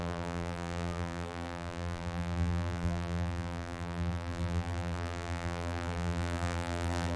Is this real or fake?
fake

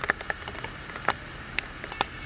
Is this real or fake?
real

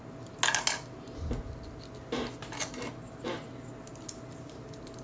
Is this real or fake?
real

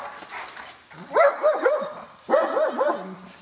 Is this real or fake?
real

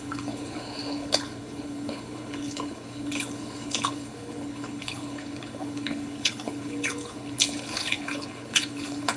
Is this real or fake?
fake